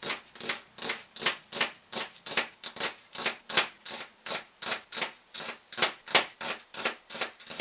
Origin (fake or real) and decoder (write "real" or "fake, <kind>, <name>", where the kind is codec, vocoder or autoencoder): real